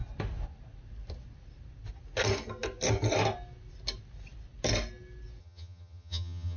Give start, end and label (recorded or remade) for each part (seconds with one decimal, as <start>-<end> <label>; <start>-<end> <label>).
0.0-5.4 recorded; 5.4-6.6 remade